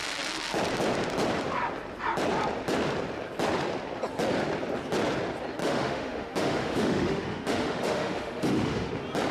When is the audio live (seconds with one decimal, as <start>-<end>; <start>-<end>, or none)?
0.0-5.6; 8.9-9.3